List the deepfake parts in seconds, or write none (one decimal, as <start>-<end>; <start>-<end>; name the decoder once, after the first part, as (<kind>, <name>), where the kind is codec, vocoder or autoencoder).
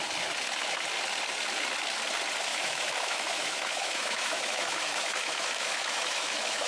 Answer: 2.5-6.7 (autoencoder, DAC-VAE)